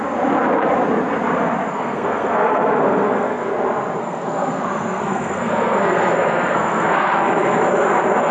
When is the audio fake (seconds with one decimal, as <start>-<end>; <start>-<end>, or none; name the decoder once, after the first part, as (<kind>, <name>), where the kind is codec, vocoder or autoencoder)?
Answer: 1.7-3.5 (codec, SNAC); 4.0-7.1